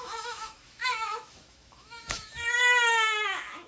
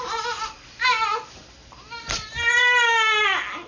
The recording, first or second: second